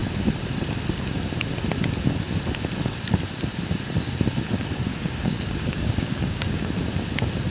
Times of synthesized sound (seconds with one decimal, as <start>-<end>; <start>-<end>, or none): 4.9-6.7

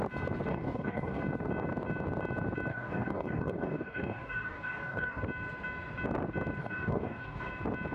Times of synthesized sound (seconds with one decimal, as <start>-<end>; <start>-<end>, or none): 0.5-1.2; 2.7-5.2; 6.6-7.5

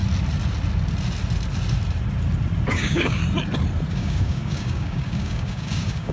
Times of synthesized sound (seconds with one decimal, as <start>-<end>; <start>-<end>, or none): 2.7-3.2; 3.9-6.1

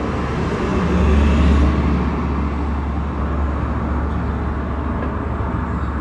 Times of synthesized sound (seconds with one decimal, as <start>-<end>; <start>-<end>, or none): none

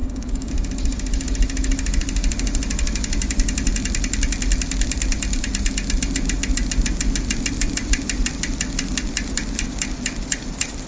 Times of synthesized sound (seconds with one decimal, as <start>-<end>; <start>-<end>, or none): 0.0-0.5